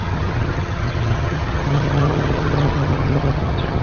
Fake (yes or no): yes